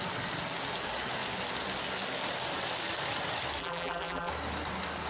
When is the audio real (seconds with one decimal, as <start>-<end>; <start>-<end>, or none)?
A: 0.0-3.6; 4.3-5.1